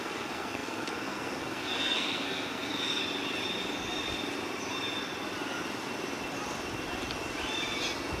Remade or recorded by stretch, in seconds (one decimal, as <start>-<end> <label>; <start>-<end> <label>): 0.0-3.0 remade; 3.0-8.2 recorded